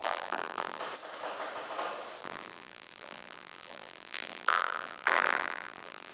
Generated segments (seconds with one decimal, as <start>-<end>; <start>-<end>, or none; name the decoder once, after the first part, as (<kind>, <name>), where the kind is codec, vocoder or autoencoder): 0.0-0.8 (vocoder, BigVGAN v2); 2.2-6.1